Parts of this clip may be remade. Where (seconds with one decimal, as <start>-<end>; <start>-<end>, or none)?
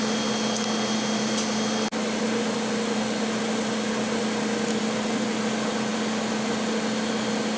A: none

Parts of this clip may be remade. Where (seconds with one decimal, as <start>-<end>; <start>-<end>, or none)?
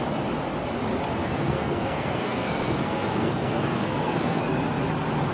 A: 1.2-4.4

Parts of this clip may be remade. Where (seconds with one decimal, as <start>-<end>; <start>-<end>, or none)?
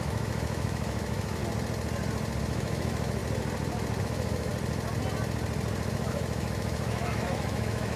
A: 0.0-1.4; 2.4-3.2; 4.0-4.5; 5.9-8.0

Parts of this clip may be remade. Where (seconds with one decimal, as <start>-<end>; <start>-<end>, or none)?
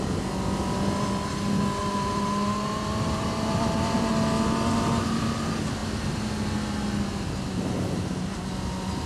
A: 1.8-4.1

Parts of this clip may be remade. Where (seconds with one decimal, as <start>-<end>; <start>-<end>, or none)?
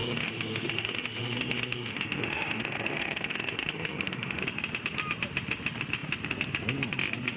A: 0.0-4.4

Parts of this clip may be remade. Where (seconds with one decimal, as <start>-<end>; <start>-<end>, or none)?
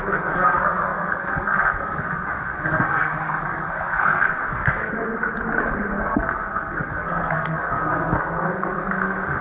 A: 0.0-4.9; 6.0-9.4